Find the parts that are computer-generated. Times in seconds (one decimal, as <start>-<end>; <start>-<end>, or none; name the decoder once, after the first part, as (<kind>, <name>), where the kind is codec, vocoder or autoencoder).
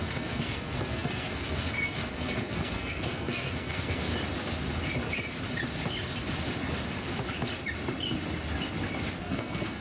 0.0-4.1 (codec, SNAC); 9.2-9.8